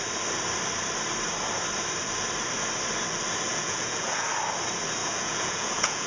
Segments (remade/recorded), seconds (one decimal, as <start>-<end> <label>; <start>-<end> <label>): 0.0-3.5 recorded; 3.5-4.3 remade; 4.3-5.0 recorded; 5.0-6.1 remade